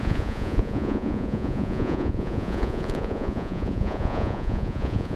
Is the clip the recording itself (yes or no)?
no